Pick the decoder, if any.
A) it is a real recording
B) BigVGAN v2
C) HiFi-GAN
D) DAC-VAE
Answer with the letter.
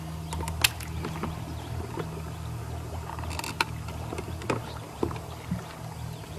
A